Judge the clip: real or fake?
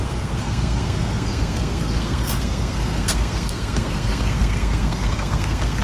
fake